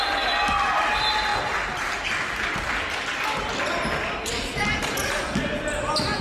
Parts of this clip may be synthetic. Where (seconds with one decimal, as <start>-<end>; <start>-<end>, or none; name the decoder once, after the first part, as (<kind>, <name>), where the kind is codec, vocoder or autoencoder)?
none